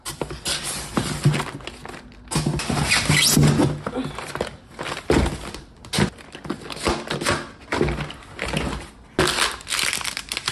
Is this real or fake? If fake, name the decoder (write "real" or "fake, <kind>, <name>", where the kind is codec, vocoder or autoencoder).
real